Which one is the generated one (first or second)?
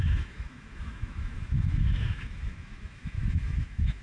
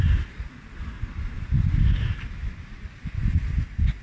first